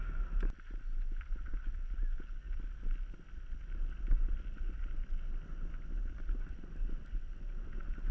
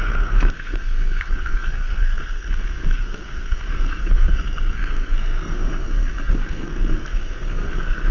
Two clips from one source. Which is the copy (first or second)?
second